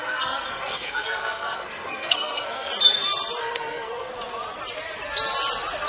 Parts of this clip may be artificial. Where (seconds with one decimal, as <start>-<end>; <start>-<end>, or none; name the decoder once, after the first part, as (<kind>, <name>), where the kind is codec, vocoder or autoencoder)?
0.0-2.7 (codec, SNAC); 3.4-4.1